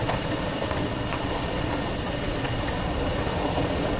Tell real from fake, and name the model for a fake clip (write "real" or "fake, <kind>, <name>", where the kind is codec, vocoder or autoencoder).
fake, vocoder, Vocos